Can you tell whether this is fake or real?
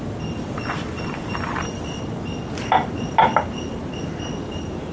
real